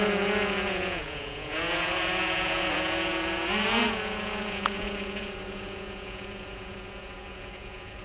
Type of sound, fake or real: fake